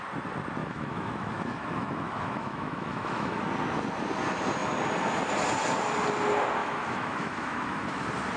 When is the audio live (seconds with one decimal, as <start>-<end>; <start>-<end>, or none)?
0.0-0.6; 3.5-6.6; 8.0-8.4